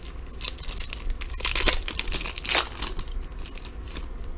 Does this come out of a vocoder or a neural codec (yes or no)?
no